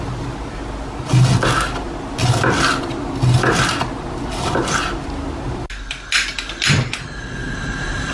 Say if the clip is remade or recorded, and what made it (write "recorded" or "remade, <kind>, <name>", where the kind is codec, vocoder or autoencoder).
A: recorded